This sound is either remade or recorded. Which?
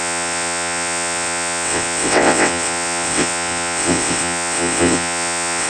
remade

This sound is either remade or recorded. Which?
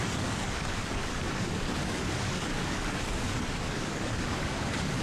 remade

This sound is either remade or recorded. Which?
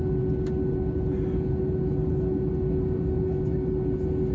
recorded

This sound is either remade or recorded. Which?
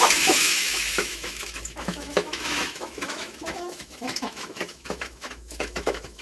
remade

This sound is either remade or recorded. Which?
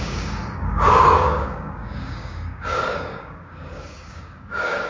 remade